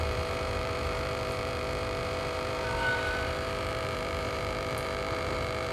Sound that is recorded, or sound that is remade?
remade